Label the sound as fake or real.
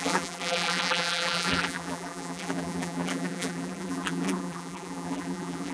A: fake